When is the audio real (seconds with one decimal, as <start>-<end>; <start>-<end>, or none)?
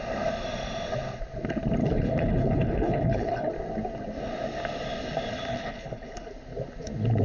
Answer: 0.0-1.8; 3.5-5.5; 6.3-7.2